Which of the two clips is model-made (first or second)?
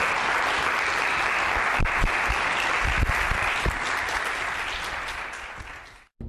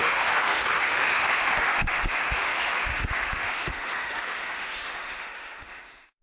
second